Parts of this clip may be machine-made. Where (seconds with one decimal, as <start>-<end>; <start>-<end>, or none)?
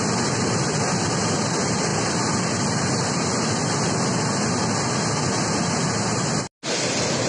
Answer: none